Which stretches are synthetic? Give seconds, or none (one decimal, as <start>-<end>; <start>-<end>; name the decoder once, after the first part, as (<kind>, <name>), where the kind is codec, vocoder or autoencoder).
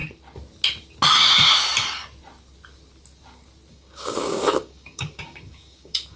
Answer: 3.7-6.2 (codec, DAC)